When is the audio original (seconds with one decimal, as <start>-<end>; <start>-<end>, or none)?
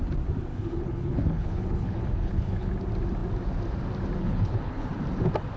0.0-0.5; 2.7-4.2; 4.9-5.6